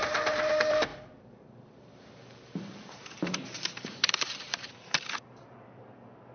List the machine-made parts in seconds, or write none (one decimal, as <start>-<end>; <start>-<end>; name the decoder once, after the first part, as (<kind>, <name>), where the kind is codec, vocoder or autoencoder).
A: 0.0-0.5 (vocoder, BigVGAN v2); 0.9-4.7